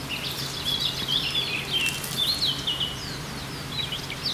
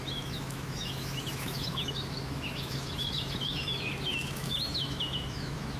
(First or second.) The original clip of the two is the first